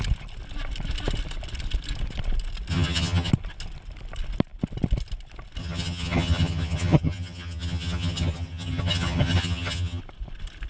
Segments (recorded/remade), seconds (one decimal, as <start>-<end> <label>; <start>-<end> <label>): 0.0-2.7 recorded; 2.7-3.3 remade; 3.3-5.6 recorded; 5.6-10.0 remade; 10.0-10.7 recorded